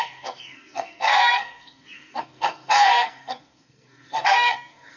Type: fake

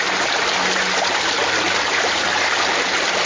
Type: real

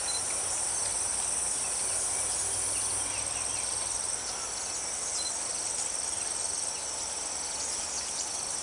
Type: real